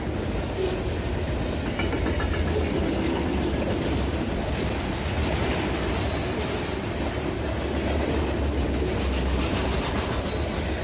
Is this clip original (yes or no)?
yes